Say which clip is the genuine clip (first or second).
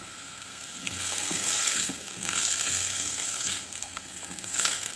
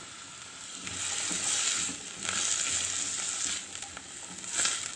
second